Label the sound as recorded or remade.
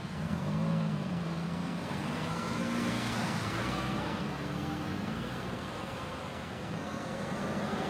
remade